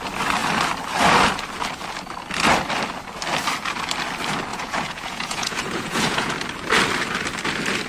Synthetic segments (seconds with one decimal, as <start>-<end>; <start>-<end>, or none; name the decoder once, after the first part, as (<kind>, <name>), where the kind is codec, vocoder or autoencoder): 4.5-6.3 (vocoder, Vocos)